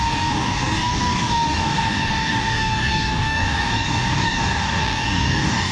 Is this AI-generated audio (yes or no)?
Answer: yes